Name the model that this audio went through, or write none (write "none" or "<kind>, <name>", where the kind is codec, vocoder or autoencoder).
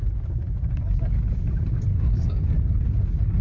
none